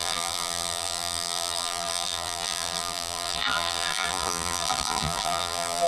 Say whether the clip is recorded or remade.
remade